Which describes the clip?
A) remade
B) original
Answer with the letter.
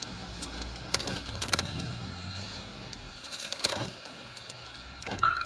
A